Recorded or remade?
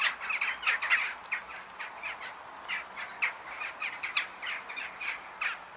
recorded